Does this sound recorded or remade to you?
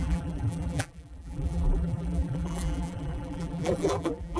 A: remade